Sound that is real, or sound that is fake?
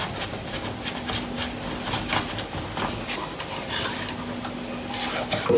real